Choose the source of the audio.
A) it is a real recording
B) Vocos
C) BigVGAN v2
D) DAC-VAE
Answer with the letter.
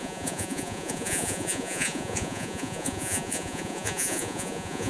B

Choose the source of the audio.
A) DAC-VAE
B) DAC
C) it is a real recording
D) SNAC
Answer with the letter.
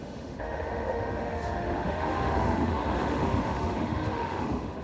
A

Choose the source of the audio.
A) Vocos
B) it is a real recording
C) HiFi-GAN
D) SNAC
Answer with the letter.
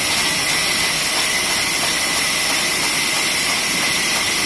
B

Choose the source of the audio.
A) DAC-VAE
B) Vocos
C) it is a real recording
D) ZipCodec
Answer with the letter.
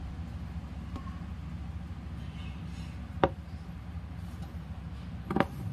C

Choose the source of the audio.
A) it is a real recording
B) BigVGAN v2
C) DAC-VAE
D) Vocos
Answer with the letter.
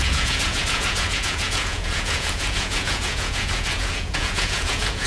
D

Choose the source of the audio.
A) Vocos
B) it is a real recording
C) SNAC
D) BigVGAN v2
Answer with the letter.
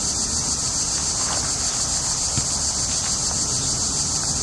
B